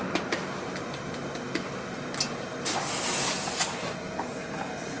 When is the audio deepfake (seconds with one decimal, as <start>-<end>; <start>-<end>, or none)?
none